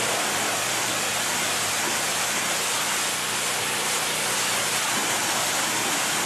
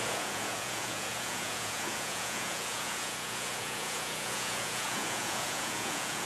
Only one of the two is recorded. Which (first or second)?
first